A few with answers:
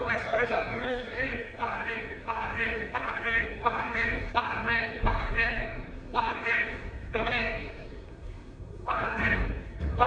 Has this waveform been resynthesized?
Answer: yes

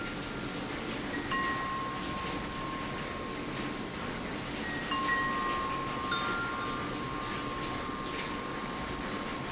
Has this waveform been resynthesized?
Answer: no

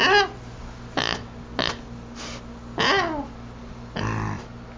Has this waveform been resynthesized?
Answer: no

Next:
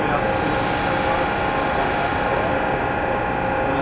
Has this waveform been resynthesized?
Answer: no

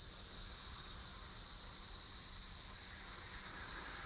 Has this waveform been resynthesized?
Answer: no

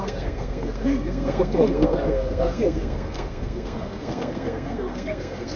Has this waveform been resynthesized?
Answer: yes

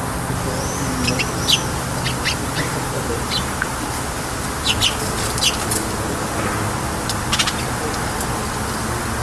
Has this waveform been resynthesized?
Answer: no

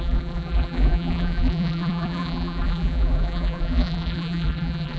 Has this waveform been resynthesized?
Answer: yes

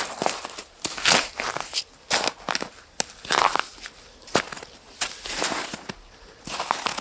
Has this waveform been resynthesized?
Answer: no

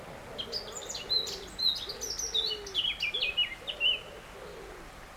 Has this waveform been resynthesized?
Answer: no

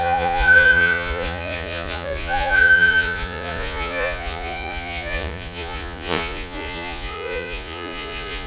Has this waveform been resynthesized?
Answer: yes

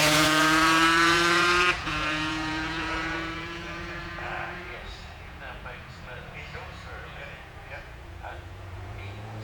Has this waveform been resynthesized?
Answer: yes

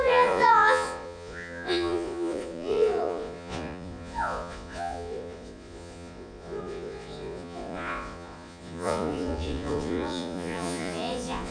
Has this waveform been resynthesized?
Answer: yes